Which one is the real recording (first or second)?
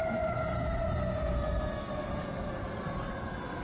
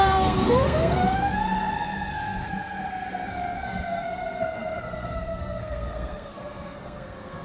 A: first